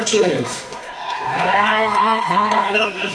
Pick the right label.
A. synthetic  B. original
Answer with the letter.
A